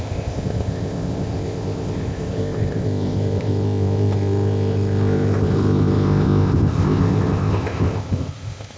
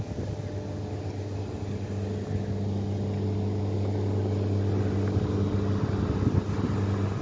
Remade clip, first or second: first